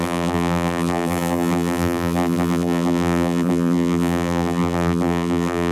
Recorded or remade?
remade